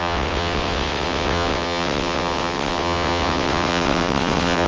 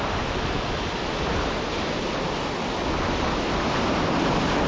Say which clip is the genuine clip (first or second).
second